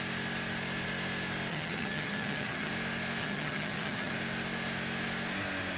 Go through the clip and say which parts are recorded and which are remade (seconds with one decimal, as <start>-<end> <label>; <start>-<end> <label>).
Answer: 0.0-1.5 recorded; 1.5-2.7 remade; 2.7-3.2 recorded; 3.2-4.1 remade; 4.1-5.8 recorded